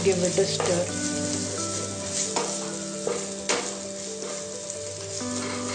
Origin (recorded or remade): recorded